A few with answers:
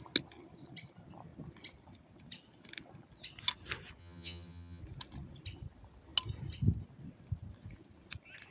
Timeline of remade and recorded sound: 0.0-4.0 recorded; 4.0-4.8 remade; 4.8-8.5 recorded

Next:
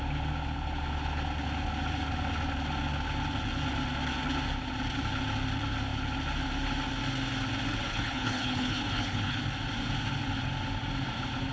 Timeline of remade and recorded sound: 0.0-7.8 recorded; 7.8-9.4 remade; 9.4-11.5 recorded

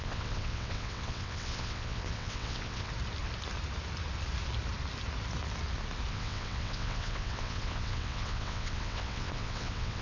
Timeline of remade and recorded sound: 0.0-2.9 remade; 2.9-6.1 recorded; 6.1-10.0 remade

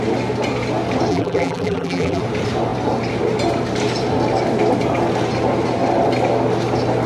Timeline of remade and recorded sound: 0.0-1.1 recorded; 1.1-2.2 remade; 2.2-7.1 recorded

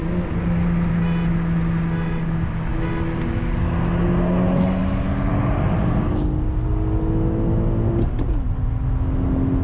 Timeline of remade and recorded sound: 0.0-9.6 recorded

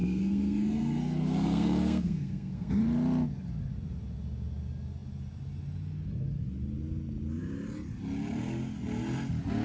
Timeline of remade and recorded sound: 0.0-2.8 remade; 2.8-9.6 recorded